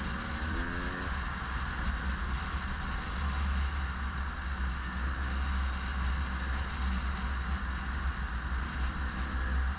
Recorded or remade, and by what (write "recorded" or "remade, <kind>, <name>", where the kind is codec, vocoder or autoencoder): recorded